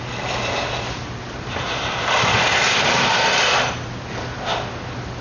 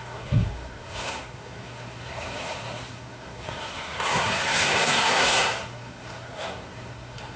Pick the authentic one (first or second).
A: first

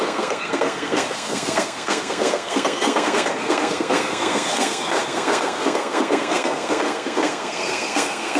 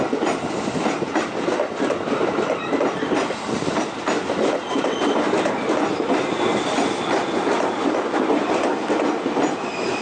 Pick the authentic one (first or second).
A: second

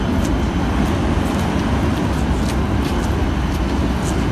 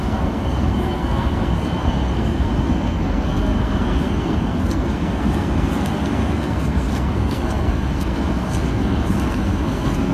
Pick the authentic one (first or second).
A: first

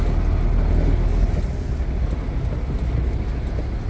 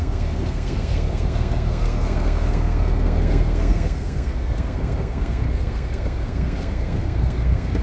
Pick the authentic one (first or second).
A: first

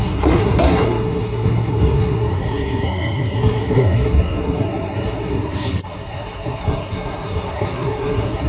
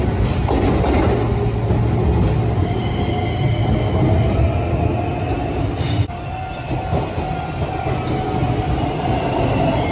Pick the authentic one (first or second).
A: second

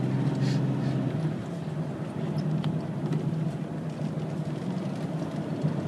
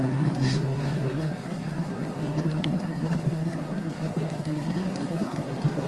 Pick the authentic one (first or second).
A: first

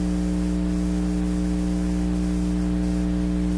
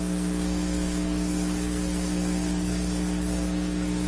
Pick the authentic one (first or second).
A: first